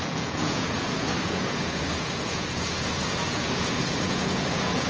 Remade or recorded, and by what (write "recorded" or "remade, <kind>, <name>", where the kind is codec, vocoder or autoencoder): remade, vocoder, Vocos